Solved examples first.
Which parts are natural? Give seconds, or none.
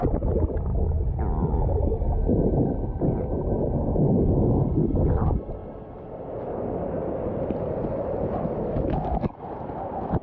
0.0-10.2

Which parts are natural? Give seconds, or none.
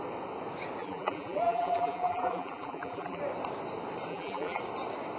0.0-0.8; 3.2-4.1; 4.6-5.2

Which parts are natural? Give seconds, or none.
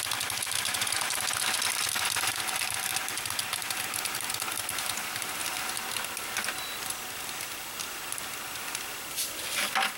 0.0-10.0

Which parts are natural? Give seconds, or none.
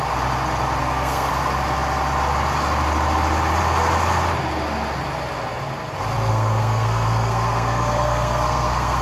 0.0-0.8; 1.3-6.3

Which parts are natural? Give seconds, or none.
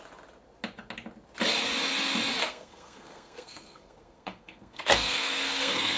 0.0-2.4